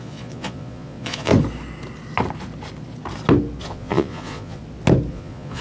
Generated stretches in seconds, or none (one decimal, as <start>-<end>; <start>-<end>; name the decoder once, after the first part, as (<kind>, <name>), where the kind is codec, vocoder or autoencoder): 0.0-1.3 (vocoder, Vocos); 3.6-4.6; 5.1-5.6